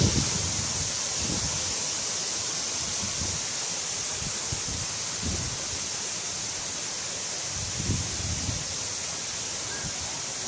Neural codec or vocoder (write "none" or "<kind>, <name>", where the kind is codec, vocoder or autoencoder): none